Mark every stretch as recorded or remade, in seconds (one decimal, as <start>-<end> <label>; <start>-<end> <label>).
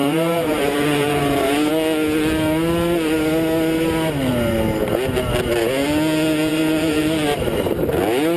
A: 0.0-1.7 remade; 1.7-6.5 recorded; 6.5-8.0 remade; 8.0-8.4 recorded